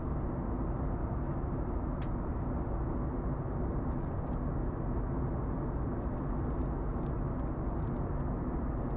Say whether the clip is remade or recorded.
recorded